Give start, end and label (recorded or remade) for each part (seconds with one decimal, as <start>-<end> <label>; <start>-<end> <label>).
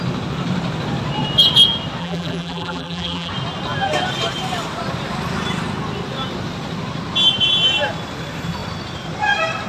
0.0-2.0 recorded; 2.0-3.3 remade; 3.3-9.7 recorded